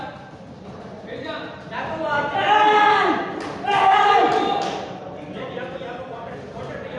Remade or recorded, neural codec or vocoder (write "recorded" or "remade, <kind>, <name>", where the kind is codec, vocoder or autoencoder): recorded